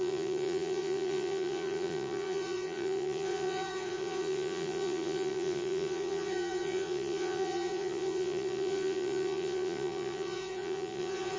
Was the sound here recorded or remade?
remade